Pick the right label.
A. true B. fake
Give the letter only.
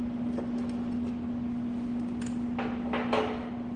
A